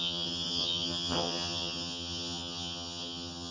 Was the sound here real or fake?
fake